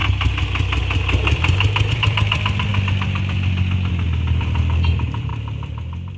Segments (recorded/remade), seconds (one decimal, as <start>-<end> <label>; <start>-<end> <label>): 0.0-1.9 recorded; 1.9-2.7 remade; 2.7-4.4 recorded; 4.4-5.3 remade; 5.3-6.2 recorded